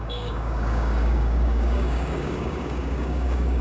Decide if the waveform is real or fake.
fake